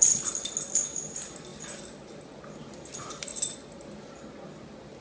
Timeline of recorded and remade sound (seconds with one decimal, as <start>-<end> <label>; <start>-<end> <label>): 0.0-5.0 recorded